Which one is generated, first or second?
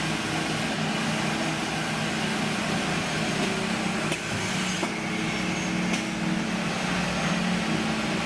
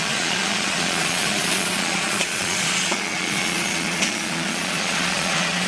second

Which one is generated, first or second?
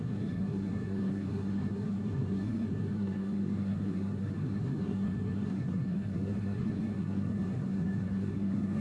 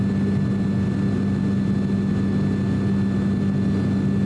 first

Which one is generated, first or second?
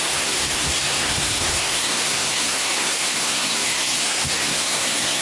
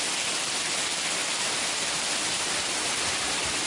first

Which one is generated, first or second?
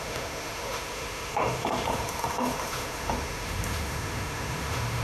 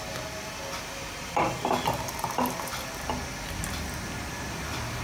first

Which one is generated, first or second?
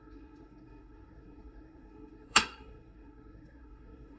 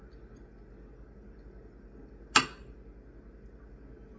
first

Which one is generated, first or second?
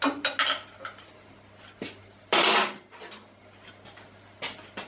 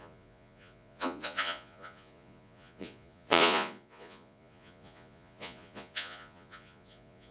second